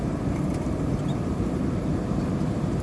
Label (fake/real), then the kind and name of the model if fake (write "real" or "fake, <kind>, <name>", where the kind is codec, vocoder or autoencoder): fake, vocoder, BigVGAN v2